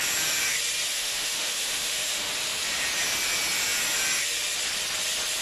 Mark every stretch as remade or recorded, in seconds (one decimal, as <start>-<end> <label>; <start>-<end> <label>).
0.0-0.9 recorded; 0.9-2.3 remade; 2.3-5.4 recorded